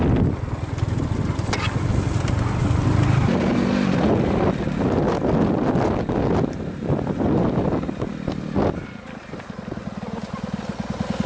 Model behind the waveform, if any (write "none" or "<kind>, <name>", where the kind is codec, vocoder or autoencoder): none